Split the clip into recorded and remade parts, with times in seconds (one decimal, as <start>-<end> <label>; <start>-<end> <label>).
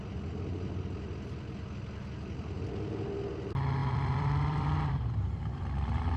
0.0-3.8 recorded; 3.8-5.6 remade; 5.6-6.2 recorded